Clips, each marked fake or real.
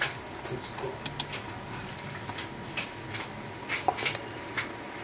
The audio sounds real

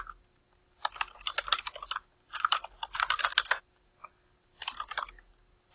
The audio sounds real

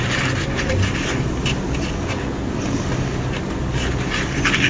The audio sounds real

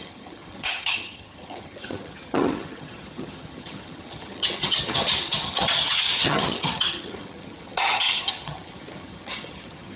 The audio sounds fake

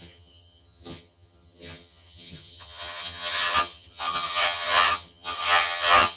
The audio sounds fake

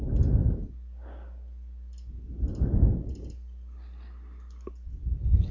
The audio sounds real